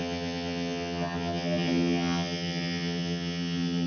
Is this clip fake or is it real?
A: fake